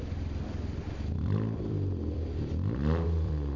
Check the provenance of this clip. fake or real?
fake